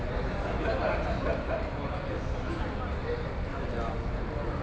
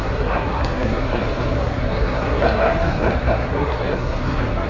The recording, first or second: first